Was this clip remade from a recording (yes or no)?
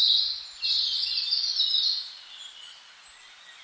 no